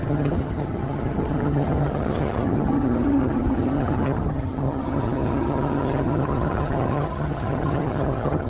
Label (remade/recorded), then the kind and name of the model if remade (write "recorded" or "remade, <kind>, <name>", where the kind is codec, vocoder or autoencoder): remade, vocoder, HiFi-GAN